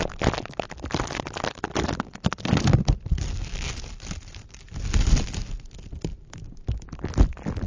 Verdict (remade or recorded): recorded